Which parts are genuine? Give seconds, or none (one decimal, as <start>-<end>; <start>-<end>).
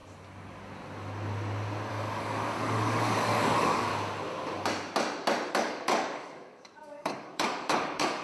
0.0-1.9; 3.9-5.5